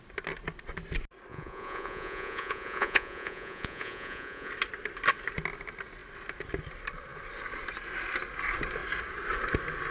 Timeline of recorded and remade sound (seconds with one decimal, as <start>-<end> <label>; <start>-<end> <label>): 0.0-1.3 recorded; 1.3-4.5 remade; 4.5-9.9 recorded